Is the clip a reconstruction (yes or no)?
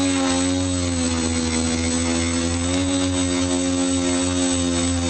no